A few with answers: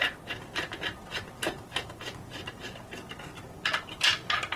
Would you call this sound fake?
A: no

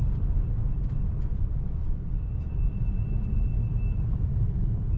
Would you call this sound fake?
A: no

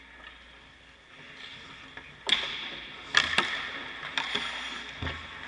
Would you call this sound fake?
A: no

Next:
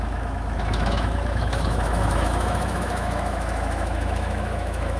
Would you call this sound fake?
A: yes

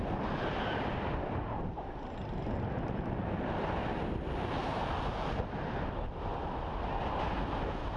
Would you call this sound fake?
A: no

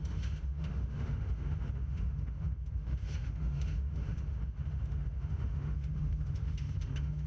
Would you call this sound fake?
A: yes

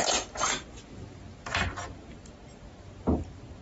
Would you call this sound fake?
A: no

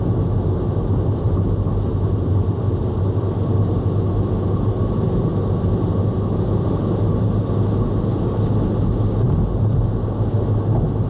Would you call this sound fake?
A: no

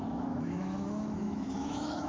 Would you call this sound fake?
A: yes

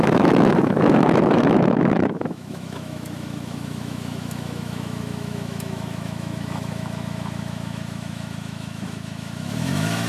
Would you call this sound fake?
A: yes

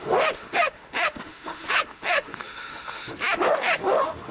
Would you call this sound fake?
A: yes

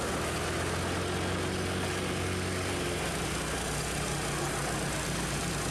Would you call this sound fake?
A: no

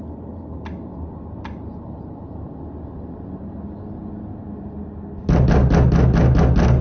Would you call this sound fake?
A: no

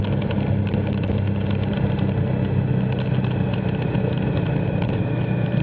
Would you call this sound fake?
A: no